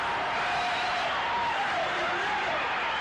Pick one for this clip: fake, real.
real